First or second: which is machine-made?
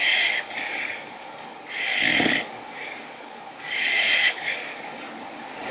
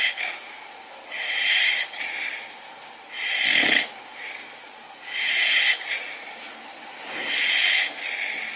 first